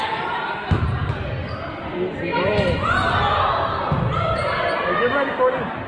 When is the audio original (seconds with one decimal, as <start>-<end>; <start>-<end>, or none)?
0.0-1.4; 2.5-5.9